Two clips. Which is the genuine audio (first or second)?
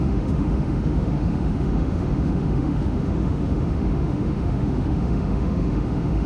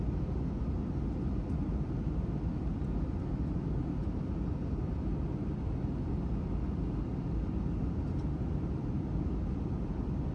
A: second